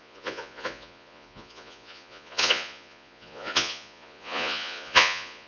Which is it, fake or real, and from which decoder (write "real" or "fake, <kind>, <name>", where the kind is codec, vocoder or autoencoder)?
fake, vocoder, Vocos